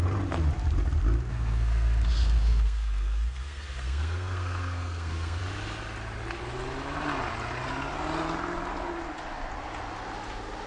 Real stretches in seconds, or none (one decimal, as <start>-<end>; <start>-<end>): 0.0-1.3; 5.4-10.7